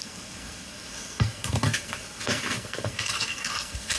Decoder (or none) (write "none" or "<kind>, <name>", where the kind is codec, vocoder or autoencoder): codec, SNAC